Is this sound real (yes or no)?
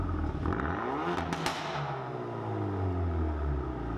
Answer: yes